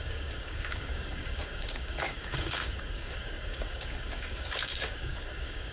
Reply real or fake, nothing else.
fake